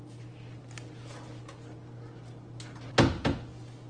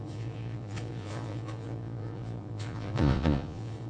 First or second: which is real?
first